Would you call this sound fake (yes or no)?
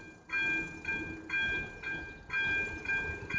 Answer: no